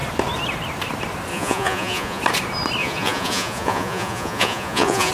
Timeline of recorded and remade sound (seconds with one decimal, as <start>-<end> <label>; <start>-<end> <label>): 0.0-1.3 recorded; 1.3-2.2 remade; 2.2-2.8 recorded; 2.8-5.1 remade